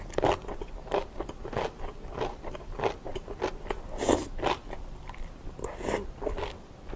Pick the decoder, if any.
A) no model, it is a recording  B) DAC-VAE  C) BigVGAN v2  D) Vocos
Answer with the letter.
A